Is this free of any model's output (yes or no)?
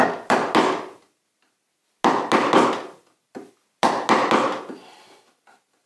yes